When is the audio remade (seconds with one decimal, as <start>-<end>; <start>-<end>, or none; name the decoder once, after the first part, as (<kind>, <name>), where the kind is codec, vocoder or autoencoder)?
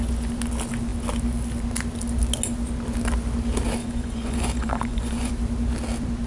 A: 3.8-5.3 (vocoder, Vocos)